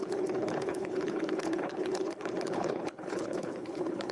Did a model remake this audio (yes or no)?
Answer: yes